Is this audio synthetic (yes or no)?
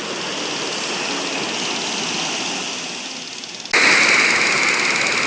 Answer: no